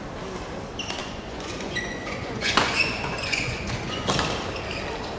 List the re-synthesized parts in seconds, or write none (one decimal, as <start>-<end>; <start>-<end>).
1.0-4.1